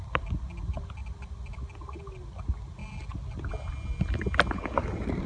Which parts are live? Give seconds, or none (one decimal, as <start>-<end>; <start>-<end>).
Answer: 0.0-5.3